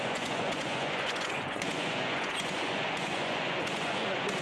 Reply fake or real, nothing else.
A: fake